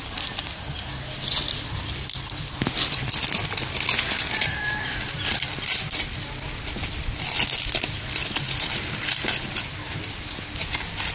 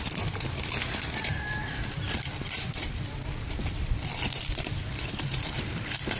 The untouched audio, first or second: first